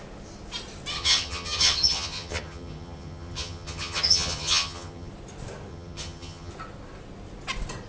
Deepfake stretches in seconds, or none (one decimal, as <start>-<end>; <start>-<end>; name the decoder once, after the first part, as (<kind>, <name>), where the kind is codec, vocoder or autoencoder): 0.9-5.1 (vocoder, HiFi-GAN); 5.7-6.5